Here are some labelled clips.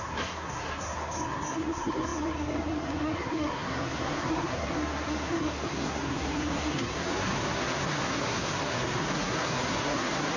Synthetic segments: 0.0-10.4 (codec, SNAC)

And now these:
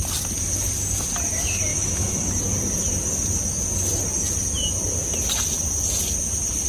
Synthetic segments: 1.7-2.3 (autoencoder, DAC-VAE)

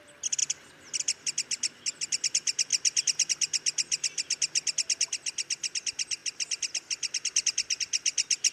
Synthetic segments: none

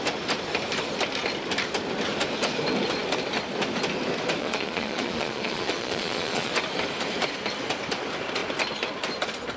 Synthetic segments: 4.4-6.5 (vocoder, Vocos)